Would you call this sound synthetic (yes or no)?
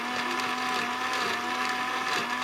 no